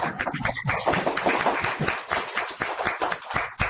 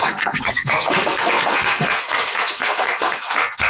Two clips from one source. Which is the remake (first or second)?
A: second